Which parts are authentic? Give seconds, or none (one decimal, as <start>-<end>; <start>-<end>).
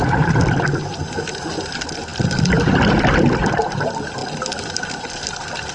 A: 0.0-5.7